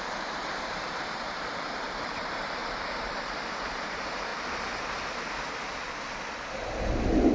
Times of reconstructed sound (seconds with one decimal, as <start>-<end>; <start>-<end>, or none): 0.0-4.3; 6.5-7.3